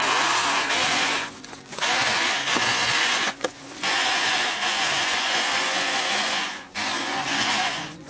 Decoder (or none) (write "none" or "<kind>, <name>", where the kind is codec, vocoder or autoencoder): vocoder, Vocos